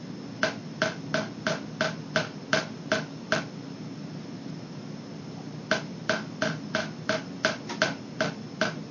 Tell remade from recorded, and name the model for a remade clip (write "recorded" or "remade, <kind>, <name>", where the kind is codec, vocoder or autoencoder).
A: recorded